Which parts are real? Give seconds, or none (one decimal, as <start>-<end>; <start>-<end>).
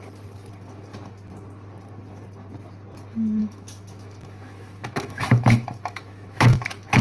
0.0-3.4